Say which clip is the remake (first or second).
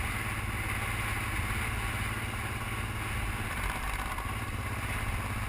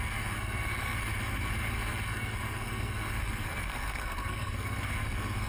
second